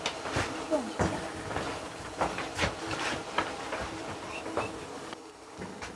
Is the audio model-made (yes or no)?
no